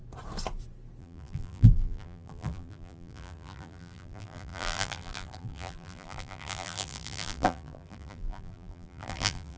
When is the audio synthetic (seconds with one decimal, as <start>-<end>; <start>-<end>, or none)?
1.0-9.6